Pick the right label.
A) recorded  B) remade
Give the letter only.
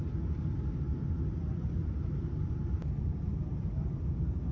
A